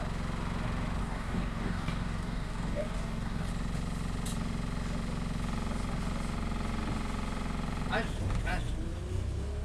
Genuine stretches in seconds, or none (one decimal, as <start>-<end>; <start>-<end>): 0.0-1.0; 3.5-9.6